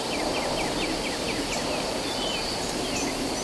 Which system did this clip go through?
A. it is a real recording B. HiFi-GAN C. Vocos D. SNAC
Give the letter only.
A